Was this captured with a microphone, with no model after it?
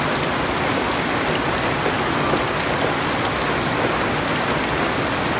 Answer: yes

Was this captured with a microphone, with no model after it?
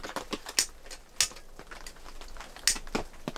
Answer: yes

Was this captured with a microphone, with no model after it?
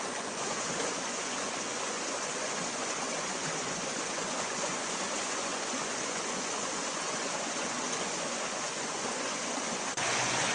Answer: no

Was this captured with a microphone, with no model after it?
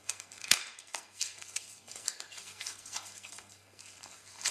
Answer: no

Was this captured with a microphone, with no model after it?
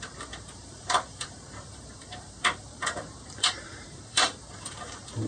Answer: no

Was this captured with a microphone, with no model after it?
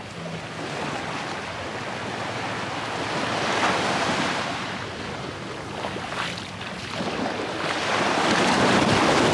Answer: yes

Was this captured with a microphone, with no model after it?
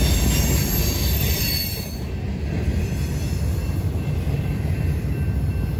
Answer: yes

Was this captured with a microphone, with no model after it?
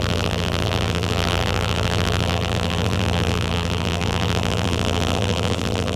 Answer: no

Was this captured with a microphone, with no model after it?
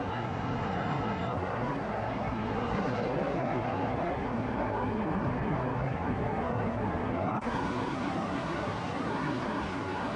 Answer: no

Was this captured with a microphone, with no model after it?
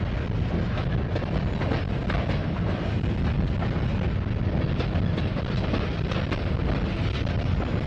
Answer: yes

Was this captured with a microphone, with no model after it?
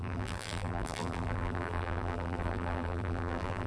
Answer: no